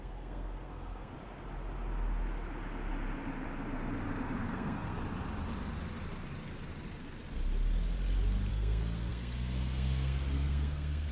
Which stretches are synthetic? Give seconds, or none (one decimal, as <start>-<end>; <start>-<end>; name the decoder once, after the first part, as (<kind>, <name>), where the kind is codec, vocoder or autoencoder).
0.0-1.1 (codec, SNAC); 4.4-5.0; 8.5-11.1